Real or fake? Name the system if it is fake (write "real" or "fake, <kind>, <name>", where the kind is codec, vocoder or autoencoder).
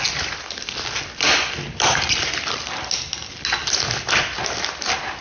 real